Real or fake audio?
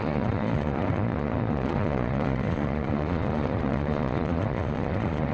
fake